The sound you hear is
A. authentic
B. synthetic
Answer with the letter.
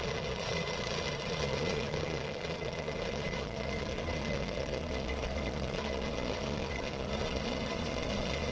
B